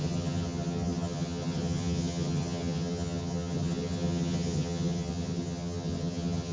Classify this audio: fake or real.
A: fake